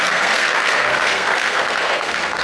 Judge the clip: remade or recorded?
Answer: remade